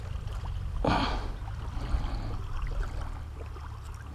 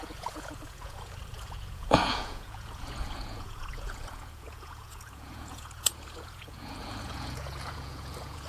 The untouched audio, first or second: first